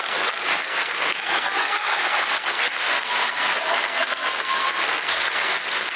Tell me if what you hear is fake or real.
fake